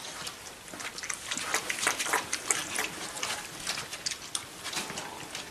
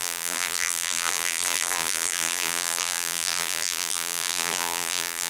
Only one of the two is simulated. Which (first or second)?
second